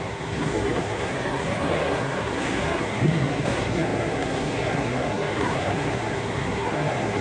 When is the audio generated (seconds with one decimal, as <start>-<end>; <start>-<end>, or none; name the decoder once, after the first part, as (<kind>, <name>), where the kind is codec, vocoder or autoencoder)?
0.0-7.2 (codec, SNAC)